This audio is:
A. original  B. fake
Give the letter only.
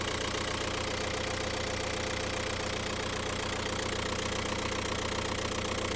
A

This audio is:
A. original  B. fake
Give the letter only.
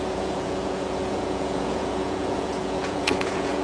B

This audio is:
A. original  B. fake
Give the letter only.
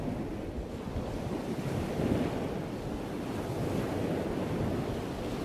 A